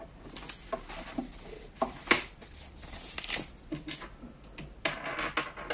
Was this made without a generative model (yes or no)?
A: yes